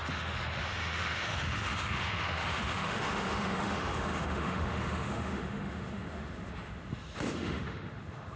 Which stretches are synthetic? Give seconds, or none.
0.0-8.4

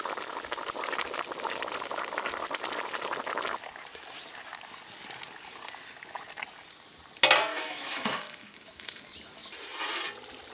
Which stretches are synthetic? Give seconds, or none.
7.5-9.0

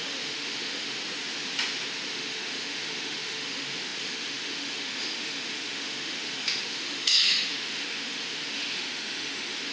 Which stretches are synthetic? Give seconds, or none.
0.0-1.0; 2.1-9.7